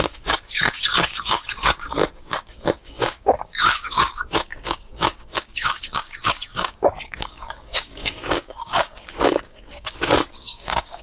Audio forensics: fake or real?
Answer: fake